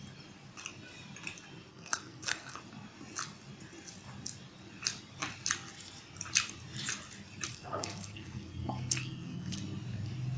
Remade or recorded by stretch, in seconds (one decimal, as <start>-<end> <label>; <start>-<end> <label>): 0.0-1.7 recorded; 1.7-2.6 remade; 2.6-7.5 recorded; 7.5-9.6 remade; 9.6-10.4 recorded